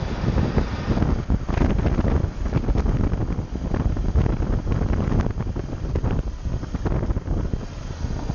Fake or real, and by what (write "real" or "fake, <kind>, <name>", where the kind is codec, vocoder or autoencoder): real